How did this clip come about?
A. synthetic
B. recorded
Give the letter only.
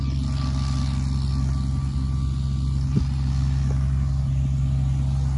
B